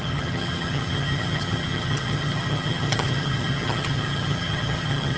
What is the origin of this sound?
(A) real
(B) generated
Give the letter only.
B